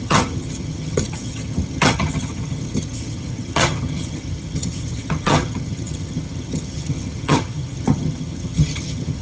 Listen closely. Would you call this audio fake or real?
fake